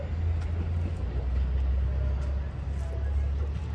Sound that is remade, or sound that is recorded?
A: recorded